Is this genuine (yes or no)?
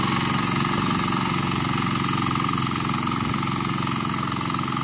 yes